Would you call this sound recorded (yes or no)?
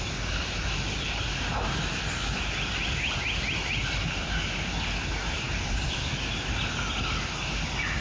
yes